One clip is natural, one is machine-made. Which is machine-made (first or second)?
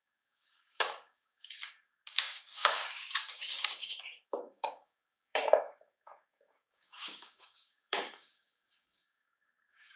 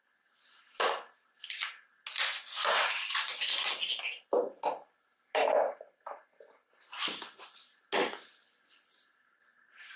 first